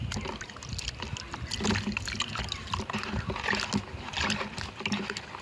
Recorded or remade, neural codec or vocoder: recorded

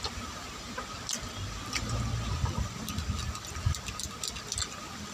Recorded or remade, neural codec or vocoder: recorded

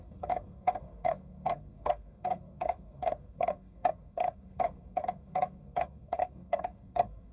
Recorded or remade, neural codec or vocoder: remade, codec, SNAC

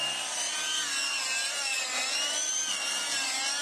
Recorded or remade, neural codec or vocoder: recorded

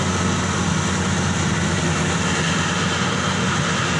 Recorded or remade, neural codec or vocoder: recorded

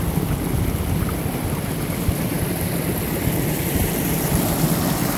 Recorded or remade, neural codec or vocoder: recorded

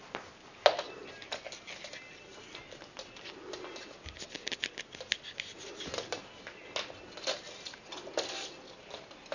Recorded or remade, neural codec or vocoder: recorded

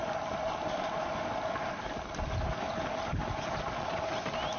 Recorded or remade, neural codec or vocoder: recorded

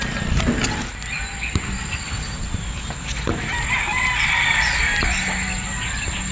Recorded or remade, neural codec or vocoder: recorded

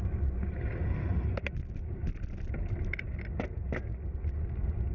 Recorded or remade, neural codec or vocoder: recorded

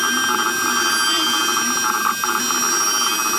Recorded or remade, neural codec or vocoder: recorded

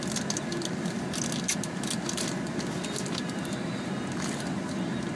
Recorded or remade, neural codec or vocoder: recorded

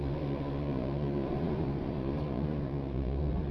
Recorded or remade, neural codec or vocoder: remade, vocoder, Vocos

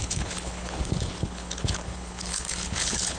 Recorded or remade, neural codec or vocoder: remade, codec, HILCodec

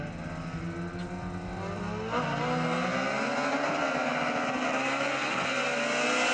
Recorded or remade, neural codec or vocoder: recorded